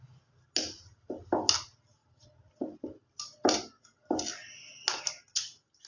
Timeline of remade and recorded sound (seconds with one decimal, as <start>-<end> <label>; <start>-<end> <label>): 0.0-5.9 recorded